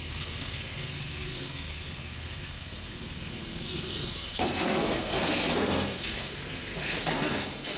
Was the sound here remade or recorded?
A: remade